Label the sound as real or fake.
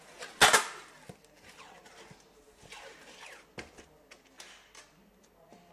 real